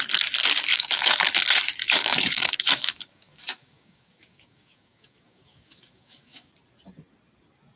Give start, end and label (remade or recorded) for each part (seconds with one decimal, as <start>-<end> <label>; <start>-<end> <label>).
0.0-0.7 recorded; 0.7-1.2 remade; 1.2-1.8 recorded; 1.8-6.5 remade; 6.5-7.8 recorded